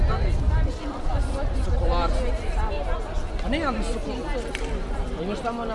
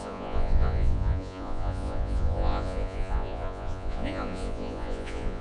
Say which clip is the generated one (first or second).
second